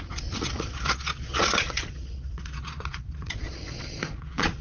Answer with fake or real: fake